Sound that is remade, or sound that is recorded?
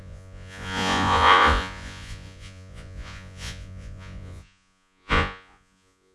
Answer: remade